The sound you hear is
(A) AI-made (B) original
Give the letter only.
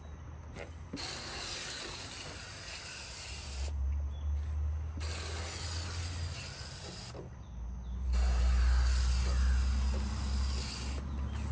B